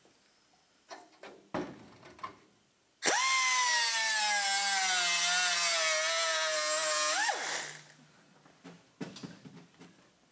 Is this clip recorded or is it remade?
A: recorded